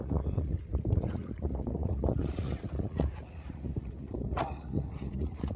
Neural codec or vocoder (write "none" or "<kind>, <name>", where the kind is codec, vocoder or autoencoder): vocoder, Vocos